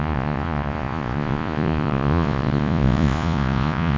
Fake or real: fake